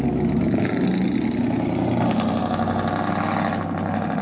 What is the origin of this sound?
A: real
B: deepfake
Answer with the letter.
A